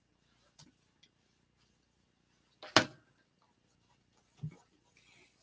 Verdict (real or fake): real